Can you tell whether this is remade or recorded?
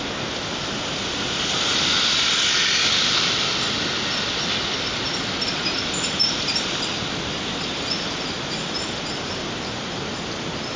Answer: recorded